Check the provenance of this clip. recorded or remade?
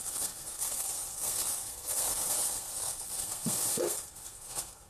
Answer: remade